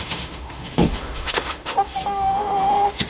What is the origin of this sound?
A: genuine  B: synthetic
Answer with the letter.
B